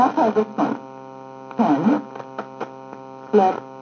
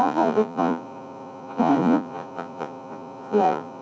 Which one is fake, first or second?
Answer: second